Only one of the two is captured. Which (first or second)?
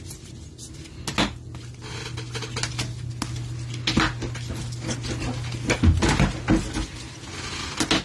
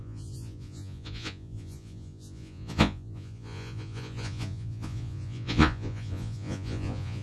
first